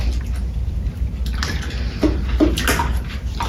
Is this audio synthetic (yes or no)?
no